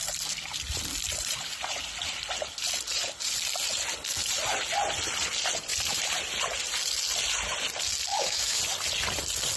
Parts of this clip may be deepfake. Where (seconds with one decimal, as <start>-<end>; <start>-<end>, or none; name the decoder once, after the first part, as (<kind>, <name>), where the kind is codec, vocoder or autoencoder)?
8.1-8.6 (autoencoder, DAC-VAE)